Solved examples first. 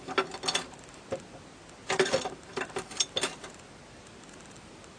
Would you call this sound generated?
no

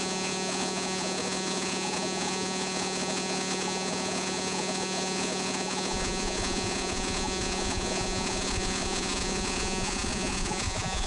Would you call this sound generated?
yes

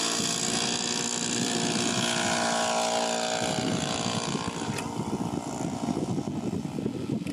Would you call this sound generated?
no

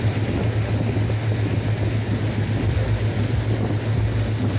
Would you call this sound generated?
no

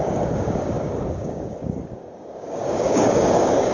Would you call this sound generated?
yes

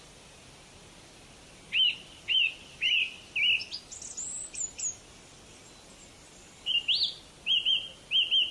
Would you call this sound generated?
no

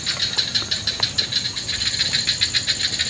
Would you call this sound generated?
no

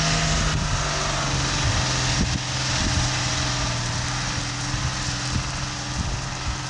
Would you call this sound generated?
no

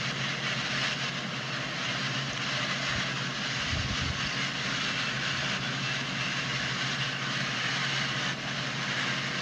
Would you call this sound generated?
no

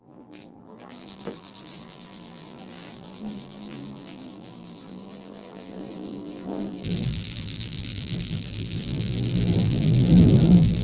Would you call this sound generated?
yes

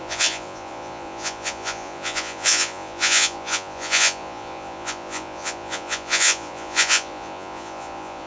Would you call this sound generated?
yes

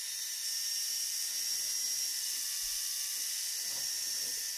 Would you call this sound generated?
no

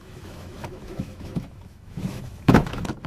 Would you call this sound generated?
yes